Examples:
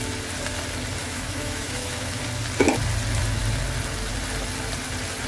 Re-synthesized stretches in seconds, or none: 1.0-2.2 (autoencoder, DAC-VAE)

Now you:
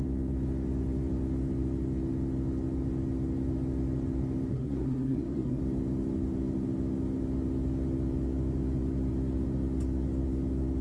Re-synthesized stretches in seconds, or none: 4.5-5.6 (codec, SNAC)

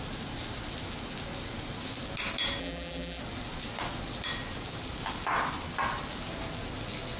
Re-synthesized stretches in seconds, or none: 2.6-3.2 (vocoder, BigVGAN v2)

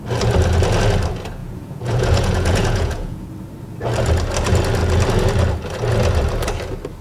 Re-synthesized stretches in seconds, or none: 1.4-3.3 (vocoder, Vocos)

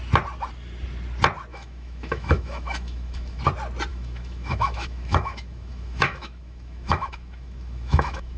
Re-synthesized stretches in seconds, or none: 1.5-3.4 (autoencoder, DAC-VAE); 3.9-8.4